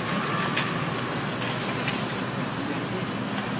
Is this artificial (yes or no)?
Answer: no